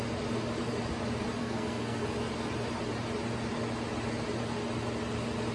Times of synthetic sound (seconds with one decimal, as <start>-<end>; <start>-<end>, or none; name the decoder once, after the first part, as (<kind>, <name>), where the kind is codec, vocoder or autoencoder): 1.4-2.0 (codec, SNAC)